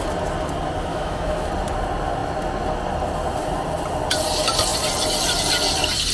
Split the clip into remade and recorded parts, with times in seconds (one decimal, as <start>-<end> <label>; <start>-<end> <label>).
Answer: 0.0-0.9 recorded; 0.9-1.5 remade; 1.5-6.1 recorded